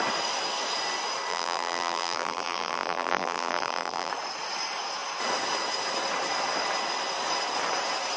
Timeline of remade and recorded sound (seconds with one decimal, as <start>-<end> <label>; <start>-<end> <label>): 0.0-1.3 recorded; 1.3-4.1 remade; 4.1-8.2 recorded